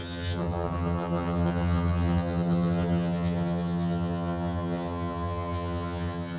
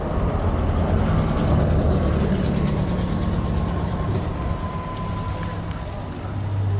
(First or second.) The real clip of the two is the second